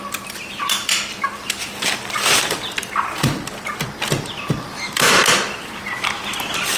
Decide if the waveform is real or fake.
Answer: fake